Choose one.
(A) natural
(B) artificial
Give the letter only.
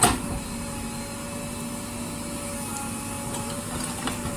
A